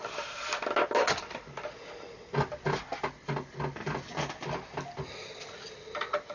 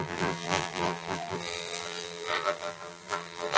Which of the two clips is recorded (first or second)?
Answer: first